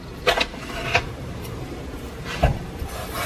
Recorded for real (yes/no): no